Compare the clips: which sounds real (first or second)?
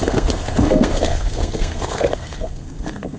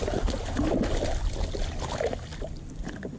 second